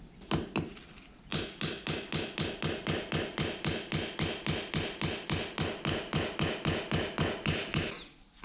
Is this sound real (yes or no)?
yes